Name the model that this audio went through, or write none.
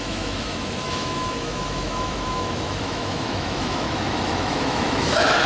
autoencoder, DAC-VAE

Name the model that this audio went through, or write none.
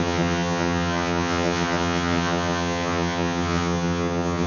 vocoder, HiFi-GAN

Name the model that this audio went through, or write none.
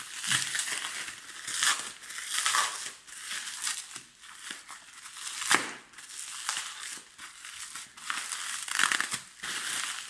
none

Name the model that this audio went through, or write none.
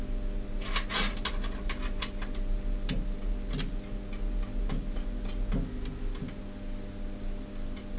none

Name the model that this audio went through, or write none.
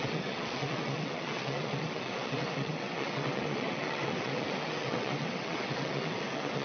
vocoder, WaveNeXt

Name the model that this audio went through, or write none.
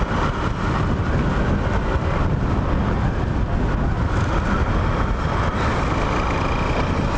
none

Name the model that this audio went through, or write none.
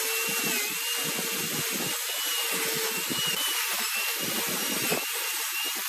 none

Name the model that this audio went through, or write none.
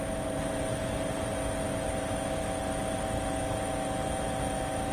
none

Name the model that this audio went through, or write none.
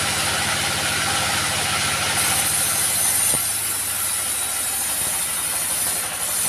none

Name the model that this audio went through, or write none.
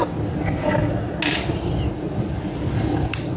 none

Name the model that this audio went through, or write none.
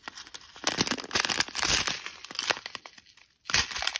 none